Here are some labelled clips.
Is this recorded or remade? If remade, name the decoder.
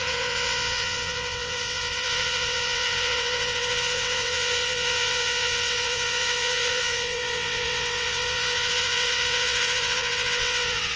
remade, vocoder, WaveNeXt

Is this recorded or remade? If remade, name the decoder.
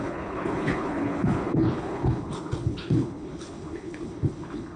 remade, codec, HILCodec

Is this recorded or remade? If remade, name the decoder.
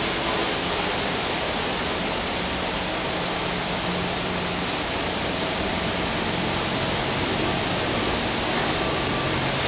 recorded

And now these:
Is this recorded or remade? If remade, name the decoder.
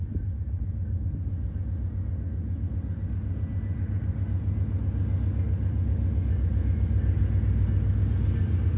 recorded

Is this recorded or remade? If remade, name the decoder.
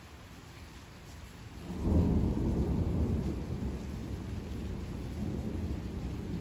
recorded